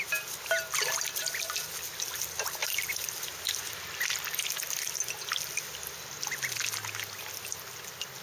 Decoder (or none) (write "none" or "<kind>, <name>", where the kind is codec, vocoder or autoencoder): none